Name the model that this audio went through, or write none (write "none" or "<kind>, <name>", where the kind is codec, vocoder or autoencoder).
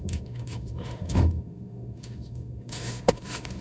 autoencoder, DAC-VAE